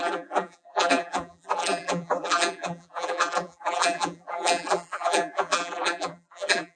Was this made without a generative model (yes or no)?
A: no